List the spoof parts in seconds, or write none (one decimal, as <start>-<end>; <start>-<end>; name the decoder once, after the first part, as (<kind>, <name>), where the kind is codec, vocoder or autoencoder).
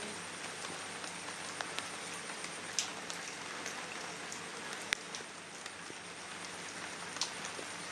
none